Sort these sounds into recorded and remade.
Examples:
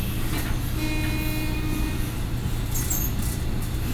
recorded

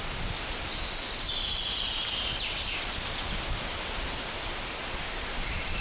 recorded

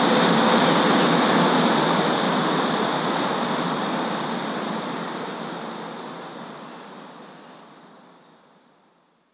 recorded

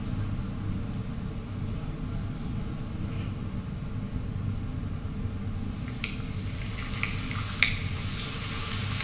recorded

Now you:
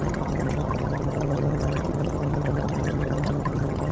remade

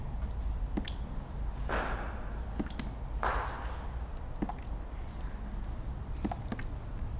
recorded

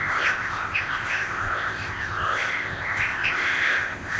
remade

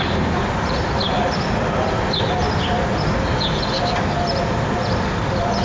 recorded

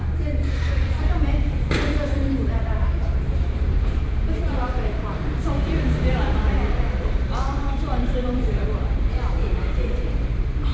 remade